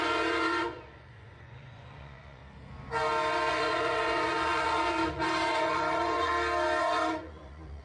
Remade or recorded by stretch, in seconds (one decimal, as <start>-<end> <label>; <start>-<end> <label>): 0.0-2.4 remade; 2.4-3.5 recorded; 3.5-6.3 remade; 6.3-6.8 recorded; 6.8-7.8 remade